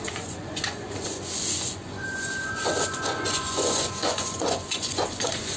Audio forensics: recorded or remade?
remade